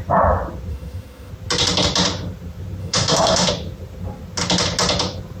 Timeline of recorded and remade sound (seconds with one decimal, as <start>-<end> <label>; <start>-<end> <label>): 0.0-0.7 recorded; 0.7-1.3 remade; 1.3-2.8 recorded; 2.8-3.5 remade; 3.5-5.4 recorded